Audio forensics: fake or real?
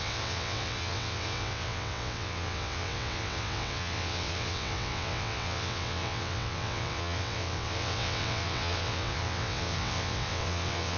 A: fake